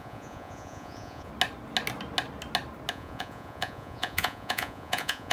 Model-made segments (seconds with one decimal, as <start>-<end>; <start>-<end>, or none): 0.0-1.3; 2.9-5.3